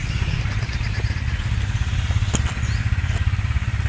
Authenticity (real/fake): real